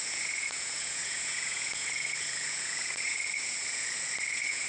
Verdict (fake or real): fake